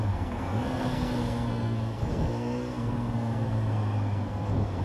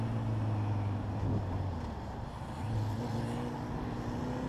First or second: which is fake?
first